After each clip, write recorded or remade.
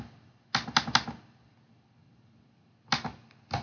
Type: recorded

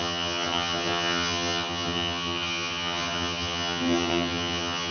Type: remade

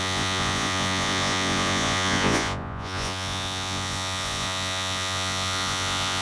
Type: remade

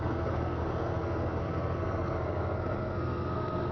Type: remade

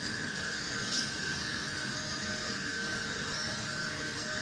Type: remade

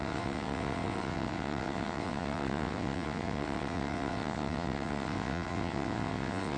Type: remade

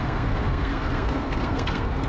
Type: remade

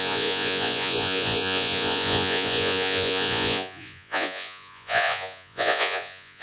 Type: remade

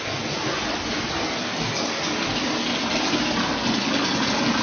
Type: recorded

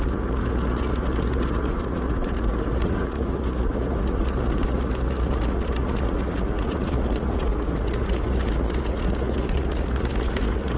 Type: remade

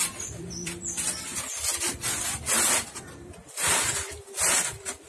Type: remade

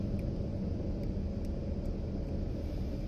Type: recorded